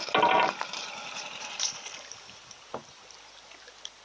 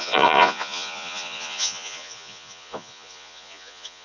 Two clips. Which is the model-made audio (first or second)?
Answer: second